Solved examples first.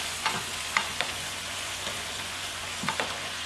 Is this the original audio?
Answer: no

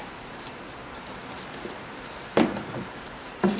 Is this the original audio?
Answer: no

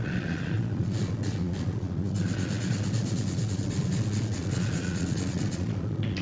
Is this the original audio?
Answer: no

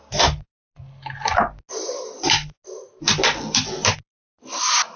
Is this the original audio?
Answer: yes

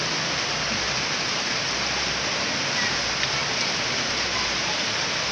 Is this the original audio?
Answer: yes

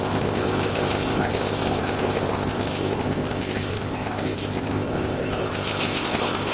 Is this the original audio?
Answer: no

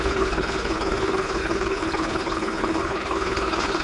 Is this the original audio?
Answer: no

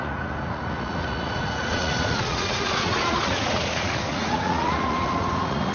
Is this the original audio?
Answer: no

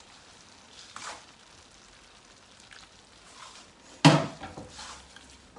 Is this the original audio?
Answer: yes